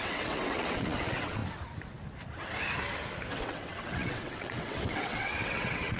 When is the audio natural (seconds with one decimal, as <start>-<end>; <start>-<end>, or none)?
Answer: 1.4-3.3